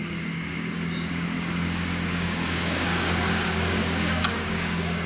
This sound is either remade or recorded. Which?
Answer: remade